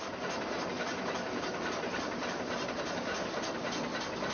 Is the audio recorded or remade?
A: recorded